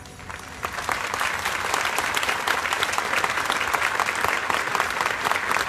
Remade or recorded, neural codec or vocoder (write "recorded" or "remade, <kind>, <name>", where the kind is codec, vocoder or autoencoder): recorded